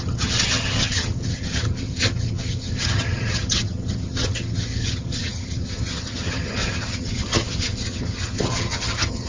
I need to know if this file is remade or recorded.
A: remade